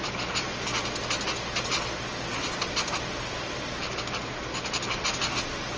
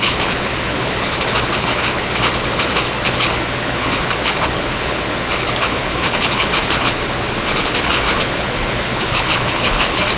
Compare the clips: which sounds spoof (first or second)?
second